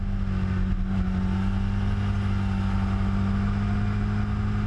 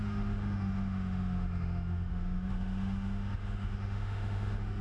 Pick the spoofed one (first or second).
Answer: second